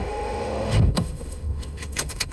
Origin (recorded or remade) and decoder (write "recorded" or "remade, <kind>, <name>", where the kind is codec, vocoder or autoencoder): remade, autoencoder, DAC-VAE